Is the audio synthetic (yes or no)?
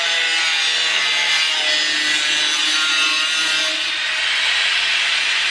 no